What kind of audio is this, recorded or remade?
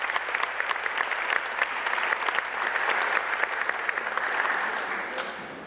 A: recorded